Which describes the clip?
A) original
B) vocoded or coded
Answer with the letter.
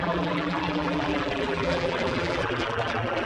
B